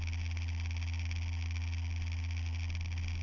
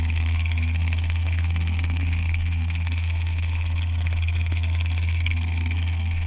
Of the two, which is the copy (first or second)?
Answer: second